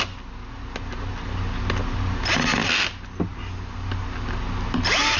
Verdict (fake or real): real